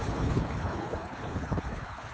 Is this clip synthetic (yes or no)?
yes